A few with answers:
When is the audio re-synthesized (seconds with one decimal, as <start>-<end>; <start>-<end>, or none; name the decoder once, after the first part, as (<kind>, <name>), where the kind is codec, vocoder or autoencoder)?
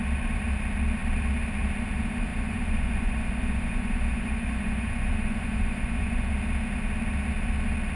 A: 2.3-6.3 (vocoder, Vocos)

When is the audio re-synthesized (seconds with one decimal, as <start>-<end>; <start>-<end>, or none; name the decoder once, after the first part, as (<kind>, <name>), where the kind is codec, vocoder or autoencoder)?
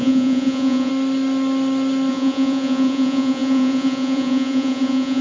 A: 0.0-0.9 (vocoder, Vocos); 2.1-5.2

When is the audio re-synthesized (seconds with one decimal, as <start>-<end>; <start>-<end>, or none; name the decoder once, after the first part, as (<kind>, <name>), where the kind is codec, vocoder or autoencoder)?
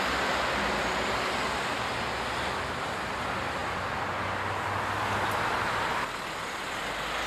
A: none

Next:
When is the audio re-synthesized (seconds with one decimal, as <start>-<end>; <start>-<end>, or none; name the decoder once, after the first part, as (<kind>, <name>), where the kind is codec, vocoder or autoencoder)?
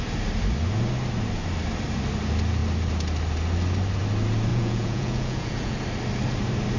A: 4.5-5.8 (vocoder, Vocos)